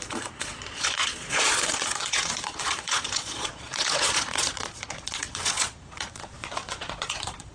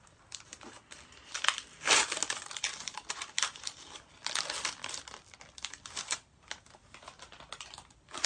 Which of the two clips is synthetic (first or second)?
first